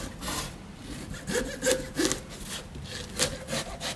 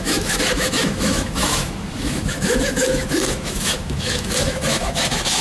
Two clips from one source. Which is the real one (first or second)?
first